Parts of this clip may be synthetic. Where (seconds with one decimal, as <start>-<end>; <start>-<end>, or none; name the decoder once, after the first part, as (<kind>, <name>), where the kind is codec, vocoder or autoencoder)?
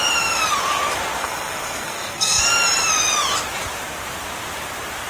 1.2-2.5 (codec, SNAC)